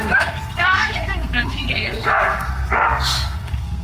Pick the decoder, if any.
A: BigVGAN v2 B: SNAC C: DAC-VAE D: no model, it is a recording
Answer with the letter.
B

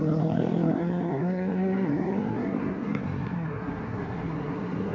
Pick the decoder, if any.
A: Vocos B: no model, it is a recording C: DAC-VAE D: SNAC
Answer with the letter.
D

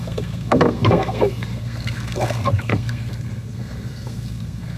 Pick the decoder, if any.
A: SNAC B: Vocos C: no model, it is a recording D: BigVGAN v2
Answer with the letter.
A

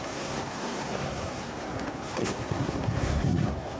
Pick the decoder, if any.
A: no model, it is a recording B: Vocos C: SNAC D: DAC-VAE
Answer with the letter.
C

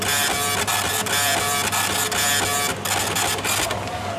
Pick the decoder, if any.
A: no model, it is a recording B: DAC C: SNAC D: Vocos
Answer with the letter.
A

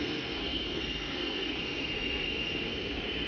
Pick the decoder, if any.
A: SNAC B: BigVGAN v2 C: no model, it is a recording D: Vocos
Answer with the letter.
A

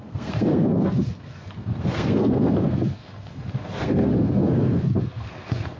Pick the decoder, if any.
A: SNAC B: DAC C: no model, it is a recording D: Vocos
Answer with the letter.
A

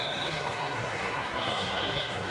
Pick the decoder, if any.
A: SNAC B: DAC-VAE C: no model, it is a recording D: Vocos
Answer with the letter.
A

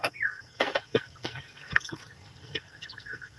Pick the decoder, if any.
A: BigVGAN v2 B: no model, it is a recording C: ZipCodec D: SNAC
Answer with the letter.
D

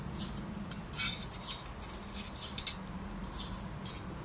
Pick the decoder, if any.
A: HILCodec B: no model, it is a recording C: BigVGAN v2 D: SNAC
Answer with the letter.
B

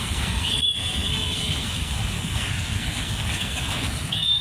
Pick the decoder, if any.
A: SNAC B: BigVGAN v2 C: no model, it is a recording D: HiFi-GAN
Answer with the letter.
A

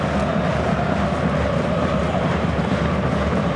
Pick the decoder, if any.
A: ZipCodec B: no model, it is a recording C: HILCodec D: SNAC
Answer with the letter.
B